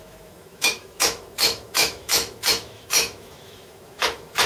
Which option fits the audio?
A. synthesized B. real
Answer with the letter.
A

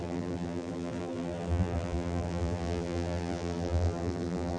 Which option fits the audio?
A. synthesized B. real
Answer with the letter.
A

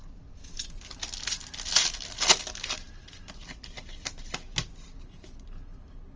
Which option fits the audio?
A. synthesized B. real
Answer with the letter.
B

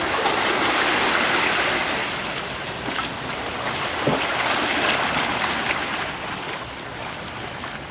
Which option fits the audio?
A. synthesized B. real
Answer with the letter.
B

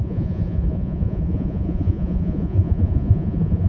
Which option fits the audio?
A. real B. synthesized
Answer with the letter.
B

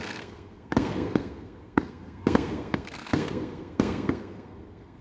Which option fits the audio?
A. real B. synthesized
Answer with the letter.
B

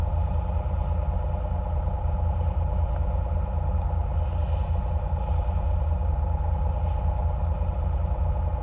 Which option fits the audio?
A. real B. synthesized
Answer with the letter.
A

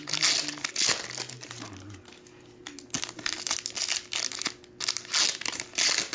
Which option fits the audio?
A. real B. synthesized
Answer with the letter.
A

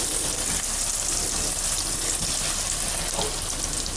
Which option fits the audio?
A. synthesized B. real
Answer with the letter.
B